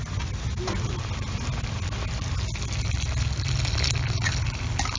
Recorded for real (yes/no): yes